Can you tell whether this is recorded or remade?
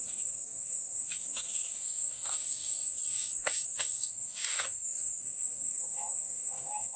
remade